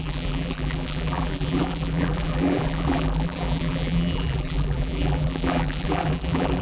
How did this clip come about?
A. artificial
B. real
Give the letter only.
A